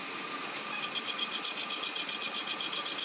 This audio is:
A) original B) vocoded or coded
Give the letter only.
A